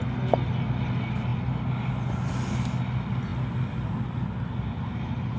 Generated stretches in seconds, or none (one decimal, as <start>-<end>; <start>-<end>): none